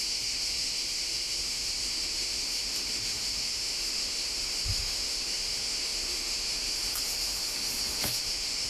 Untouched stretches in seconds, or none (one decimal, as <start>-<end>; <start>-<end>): none

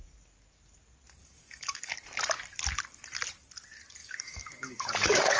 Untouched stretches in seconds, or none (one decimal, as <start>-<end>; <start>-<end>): 0.0-1.2; 1.9-4.0

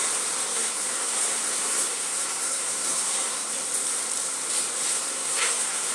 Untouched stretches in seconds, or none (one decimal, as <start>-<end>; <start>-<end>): 0.0-0.5; 3.5-4.9